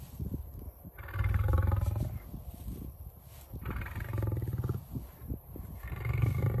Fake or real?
real